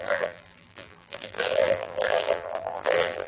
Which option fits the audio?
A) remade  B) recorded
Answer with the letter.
A